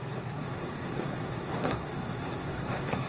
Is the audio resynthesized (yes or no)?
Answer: yes